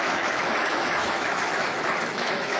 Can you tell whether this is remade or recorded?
remade